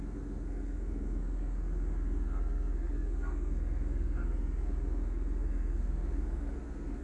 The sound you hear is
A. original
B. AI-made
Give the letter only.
B